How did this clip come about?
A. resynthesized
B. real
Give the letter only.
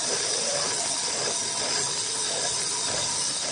B